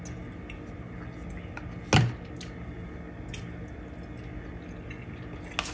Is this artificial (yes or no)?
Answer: no